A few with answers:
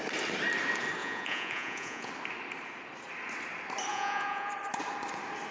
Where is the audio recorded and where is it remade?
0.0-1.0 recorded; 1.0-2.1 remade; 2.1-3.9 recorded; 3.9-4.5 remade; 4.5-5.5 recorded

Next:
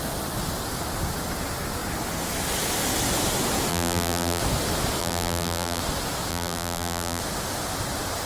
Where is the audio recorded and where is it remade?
0.0-3.7 recorded; 3.7-4.4 remade; 4.4-5.0 recorded; 5.0-5.8 remade; 5.8-6.3 recorded; 6.3-7.2 remade; 7.2-8.3 recorded

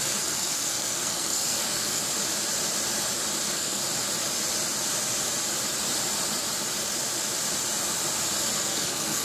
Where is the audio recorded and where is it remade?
0.0-2.0 remade; 2.0-3.4 recorded; 3.4-3.8 remade; 3.8-8.6 recorded; 8.6-9.2 remade

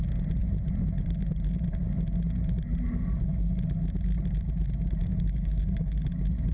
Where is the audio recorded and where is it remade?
0.0-5.0 recorded; 5.0-6.0 remade; 6.0-6.5 recorded

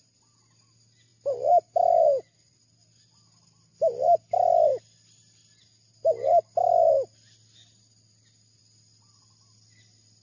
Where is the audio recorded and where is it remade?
0.0-10.2 recorded

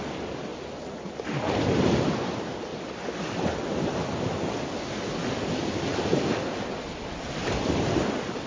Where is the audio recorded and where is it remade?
0.0-8.5 recorded